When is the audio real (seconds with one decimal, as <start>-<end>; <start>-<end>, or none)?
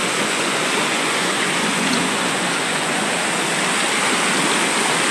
3.1-5.1